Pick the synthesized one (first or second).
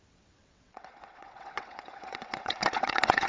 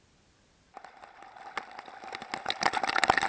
first